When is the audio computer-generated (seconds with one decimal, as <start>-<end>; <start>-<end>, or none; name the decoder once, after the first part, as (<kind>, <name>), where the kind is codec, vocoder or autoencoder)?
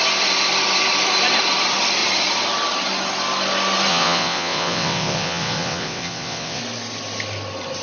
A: 3.9-6.6 (vocoder, WaveNeXt)